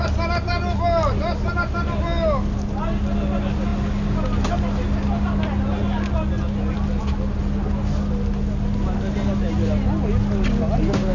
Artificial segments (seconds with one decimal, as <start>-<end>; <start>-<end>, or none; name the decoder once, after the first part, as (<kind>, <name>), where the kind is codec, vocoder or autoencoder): none

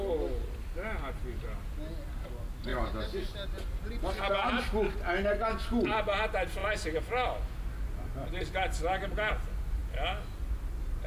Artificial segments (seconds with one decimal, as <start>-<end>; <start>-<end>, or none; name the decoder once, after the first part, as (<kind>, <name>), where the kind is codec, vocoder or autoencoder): none

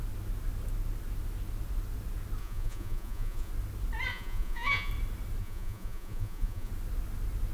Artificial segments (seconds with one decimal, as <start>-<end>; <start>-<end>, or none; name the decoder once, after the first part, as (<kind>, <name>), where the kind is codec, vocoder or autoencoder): 2.4-3.5 (vocoder, Vocos); 4.1-4.9; 5.4-6.7

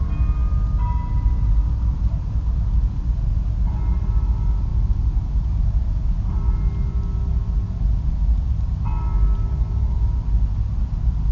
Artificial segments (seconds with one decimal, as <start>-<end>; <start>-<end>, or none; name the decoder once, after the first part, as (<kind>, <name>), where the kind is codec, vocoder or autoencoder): none